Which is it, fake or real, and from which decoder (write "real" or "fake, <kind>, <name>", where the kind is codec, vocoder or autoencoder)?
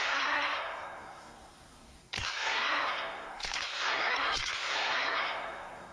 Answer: fake, codec, SNAC